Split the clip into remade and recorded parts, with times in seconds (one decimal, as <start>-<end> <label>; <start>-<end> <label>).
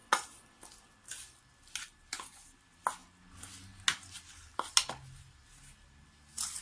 0.0-6.6 recorded